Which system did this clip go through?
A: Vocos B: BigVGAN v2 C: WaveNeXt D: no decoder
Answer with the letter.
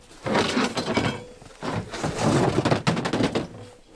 D